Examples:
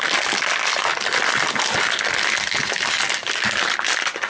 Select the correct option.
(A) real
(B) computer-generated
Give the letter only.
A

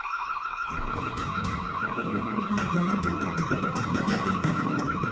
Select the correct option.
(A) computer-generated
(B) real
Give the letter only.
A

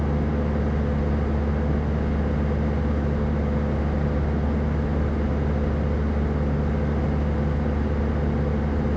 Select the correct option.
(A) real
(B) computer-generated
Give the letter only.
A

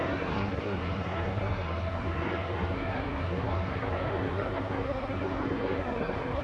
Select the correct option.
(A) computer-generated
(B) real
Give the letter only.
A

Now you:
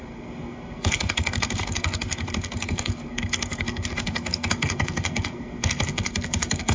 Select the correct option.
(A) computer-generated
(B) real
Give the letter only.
A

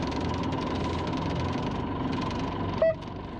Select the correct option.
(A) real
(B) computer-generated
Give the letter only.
A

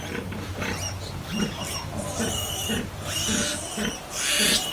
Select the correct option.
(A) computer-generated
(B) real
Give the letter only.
B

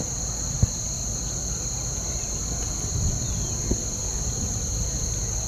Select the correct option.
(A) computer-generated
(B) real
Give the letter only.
B